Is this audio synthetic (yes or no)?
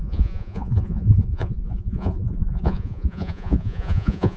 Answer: yes